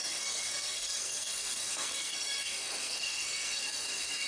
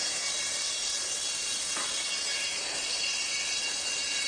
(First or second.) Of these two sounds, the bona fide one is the second